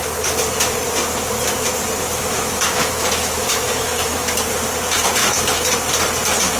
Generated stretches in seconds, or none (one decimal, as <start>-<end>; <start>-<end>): 2.0-4.3; 5.2-5.7